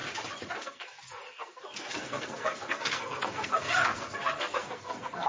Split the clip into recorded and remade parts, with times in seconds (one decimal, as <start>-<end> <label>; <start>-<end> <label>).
0.0-0.6 recorded; 0.6-5.3 remade